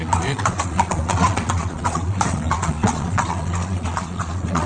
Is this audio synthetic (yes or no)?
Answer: yes